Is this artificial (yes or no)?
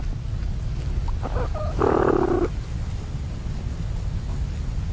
no